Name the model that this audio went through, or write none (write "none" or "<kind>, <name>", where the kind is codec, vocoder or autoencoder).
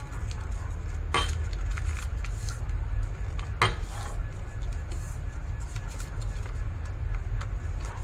none